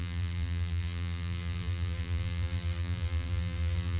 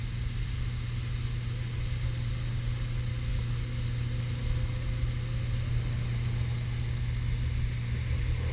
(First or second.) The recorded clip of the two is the second